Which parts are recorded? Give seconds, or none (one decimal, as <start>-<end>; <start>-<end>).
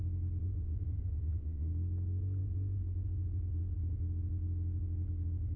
0.0-0.4; 1.7-5.6